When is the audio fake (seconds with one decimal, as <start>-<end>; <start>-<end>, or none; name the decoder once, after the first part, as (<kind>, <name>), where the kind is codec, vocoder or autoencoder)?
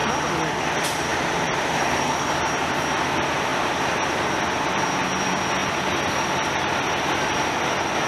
1.1-2.3 (vocoder, BigVGAN v2); 3.5-4.2